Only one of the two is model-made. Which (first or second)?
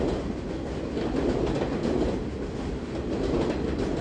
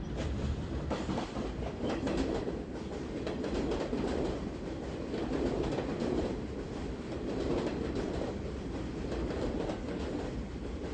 second